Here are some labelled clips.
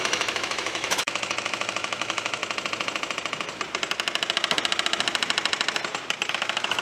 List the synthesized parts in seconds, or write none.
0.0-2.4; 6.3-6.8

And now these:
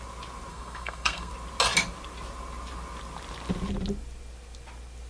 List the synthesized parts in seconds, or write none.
0.5-1.3

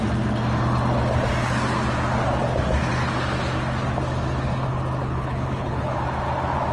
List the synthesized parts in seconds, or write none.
5.0-5.9

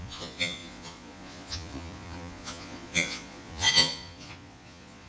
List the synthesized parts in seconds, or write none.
0.0-5.1

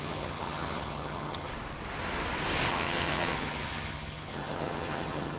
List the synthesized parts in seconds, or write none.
0.0-1.5; 2.7-5.4

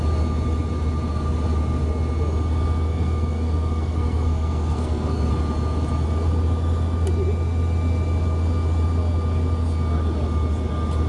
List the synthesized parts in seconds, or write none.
2.9-5.3

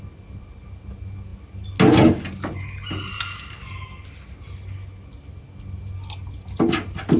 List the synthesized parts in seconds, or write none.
none